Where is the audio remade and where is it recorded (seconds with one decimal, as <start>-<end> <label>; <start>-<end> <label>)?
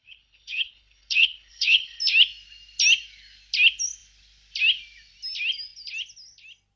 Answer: 0.0-2.0 remade; 2.0-6.8 recorded